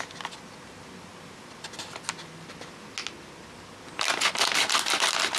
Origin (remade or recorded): recorded